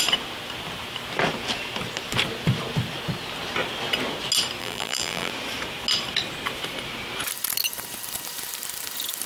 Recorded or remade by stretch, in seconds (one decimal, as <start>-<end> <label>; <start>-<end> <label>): 0.0-4.6 recorded; 4.6-5.3 remade; 5.3-9.3 recorded